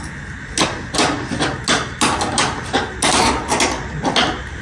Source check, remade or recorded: recorded